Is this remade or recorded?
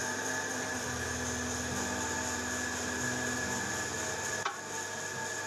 recorded